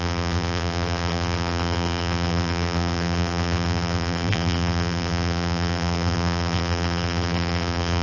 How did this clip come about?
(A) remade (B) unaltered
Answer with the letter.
A